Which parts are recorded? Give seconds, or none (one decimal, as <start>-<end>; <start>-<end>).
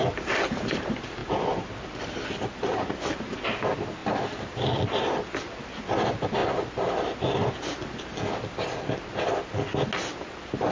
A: 0.0-10.7